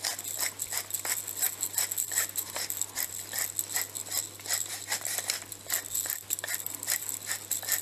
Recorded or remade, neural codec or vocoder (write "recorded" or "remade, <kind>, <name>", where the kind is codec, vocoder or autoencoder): recorded